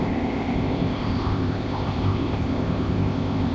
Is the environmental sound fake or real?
fake